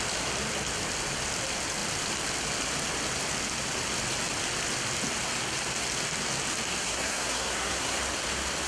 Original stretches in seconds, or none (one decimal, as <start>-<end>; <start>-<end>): 0.0-6.8; 8.0-8.7